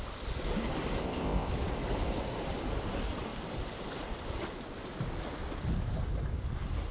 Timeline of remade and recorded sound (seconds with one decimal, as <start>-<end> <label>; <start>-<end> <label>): 0.0-1.0 recorded; 1.0-1.5 remade; 1.5-6.9 recorded

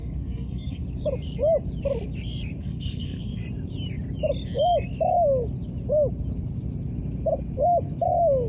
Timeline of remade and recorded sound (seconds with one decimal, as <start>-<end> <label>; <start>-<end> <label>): 0.0-0.8 remade; 0.8-2.6 recorded; 2.6-3.4 remade; 3.4-8.5 recorded

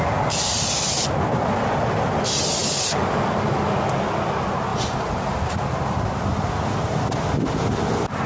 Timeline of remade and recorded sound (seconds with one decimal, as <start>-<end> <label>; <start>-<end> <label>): 0.0-8.3 recorded

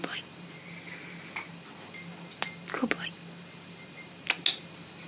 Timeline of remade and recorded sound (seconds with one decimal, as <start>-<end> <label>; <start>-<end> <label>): 0.0-5.1 recorded

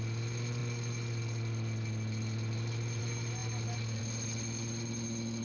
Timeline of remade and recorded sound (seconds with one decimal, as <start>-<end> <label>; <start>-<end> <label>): 0.0-5.4 recorded